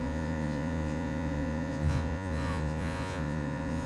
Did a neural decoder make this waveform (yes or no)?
yes